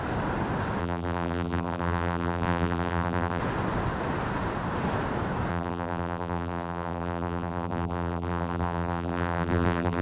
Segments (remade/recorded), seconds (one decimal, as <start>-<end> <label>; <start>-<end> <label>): 0.0-0.8 recorded; 0.8-3.4 remade; 3.4-5.5 recorded; 5.5-10.0 remade